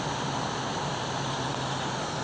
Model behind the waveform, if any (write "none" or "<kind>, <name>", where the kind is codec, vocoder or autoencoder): none